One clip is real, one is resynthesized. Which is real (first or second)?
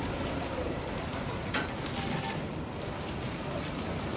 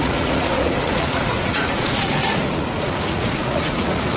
first